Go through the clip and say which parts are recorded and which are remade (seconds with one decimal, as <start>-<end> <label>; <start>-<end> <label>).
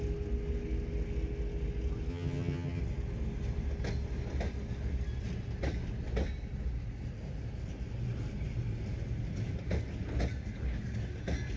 0.0-2.1 recorded; 2.1-2.8 remade; 2.8-11.6 recorded